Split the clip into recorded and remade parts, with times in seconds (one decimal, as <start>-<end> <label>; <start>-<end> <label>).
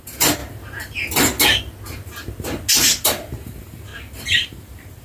0.0-0.4 remade; 0.4-2.7 recorded; 2.7-3.9 remade; 3.9-5.0 recorded